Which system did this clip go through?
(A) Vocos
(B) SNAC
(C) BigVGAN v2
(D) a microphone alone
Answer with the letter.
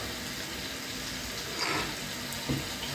D